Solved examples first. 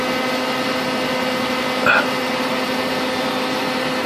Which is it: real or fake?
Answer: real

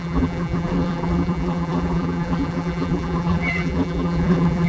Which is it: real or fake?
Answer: fake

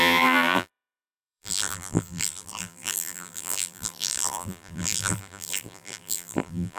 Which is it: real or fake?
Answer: fake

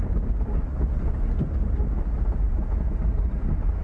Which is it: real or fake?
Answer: real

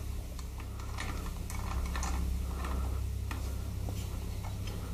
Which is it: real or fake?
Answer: real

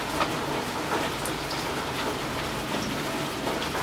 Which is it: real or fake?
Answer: real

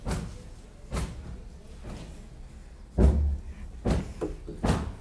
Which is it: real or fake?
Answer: real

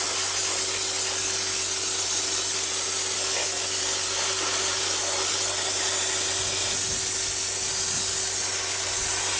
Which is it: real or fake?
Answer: real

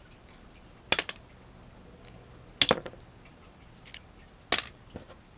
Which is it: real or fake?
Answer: real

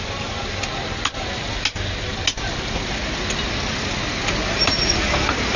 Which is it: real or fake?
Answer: real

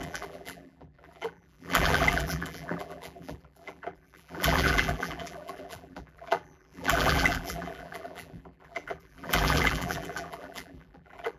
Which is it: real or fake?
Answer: fake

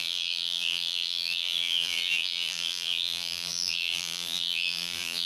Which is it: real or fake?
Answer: fake